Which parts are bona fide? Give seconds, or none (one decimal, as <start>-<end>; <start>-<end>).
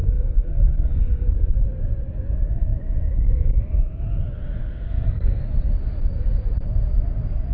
1.5-4.6; 5.4-7.5